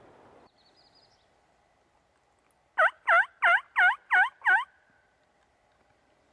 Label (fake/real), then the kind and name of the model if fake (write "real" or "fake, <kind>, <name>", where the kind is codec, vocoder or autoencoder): real